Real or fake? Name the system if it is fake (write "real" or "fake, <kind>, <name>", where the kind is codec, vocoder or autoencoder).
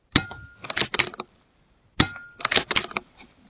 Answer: real